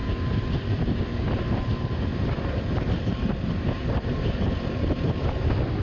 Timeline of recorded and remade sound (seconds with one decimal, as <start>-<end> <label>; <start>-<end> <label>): 0.0-1.0 remade; 1.0-2.1 recorded; 2.1-5.8 remade